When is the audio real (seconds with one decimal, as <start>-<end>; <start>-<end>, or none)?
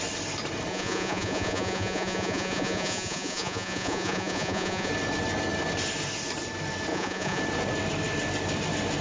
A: 0.0-0.7; 4.9-6.9; 7.4-9.0